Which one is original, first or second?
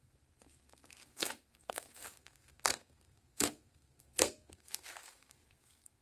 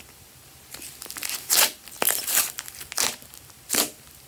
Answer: second